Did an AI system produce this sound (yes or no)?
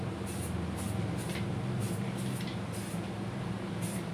no